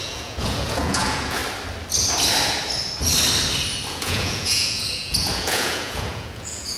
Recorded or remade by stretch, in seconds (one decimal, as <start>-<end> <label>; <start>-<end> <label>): 0.0-1.4 remade; 1.4-3.9 recorded; 3.9-6.8 remade